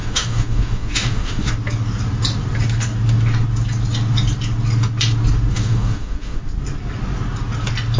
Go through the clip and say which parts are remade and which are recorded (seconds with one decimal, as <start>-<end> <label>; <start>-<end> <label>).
0.0-1.5 remade; 1.5-5.5 recorded; 5.5-6.4 remade; 6.4-8.0 recorded